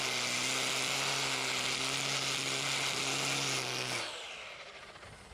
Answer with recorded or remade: recorded